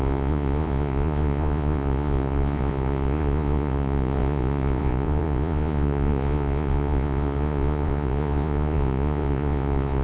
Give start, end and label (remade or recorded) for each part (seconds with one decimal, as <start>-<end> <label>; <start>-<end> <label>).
0.0-10.0 remade